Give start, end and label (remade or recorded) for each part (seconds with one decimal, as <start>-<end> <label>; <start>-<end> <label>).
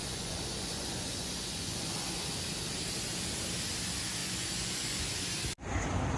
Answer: 0.0-2.4 remade; 2.4-4.2 recorded; 4.2-5.2 remade; 5.2-6.2 recorded